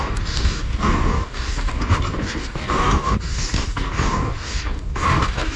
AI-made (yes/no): yes